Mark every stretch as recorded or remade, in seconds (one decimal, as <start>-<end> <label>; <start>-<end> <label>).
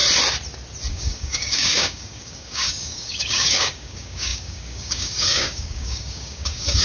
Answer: 0.0-0.9 recorded; 0.9-6.8 remade